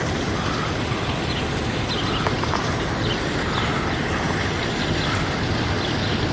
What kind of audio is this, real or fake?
real